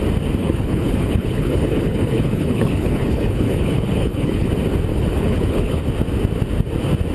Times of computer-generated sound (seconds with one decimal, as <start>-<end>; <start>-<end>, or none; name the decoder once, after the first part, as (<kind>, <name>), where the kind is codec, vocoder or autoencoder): 0.4-4.5 (codec, HILCodec); 4.9-5.8